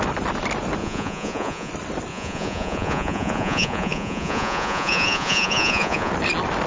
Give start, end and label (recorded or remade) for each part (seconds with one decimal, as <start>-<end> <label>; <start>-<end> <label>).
0.0-0.8 recorded; 0.8-1.7 remade; 1.7-2.1 recorded; 2.1-6.1 remade; 6.1-6.7 recorded